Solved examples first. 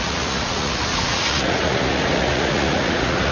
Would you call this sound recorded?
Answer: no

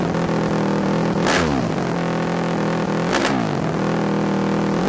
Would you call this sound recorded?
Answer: yes